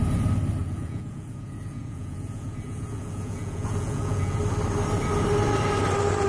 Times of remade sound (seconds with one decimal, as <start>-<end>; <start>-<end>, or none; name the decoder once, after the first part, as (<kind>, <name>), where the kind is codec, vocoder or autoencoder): 0.6-4.4 (vocoder, Vocos)